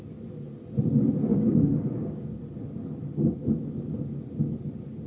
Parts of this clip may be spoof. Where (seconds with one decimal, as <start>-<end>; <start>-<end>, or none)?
1.3-2.4